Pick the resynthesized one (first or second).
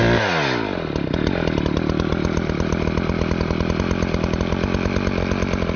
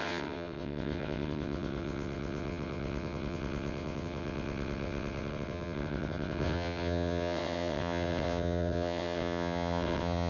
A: second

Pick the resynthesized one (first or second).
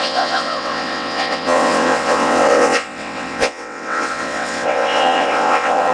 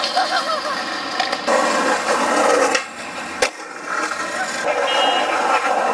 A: first